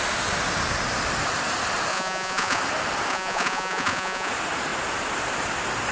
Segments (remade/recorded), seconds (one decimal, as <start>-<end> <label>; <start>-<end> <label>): 0.0-1.9 recorded; 1.9-2.6 remade; 2.6-3.1 recorded; 3.1-4.3 remade; 4.3-5.9 recorded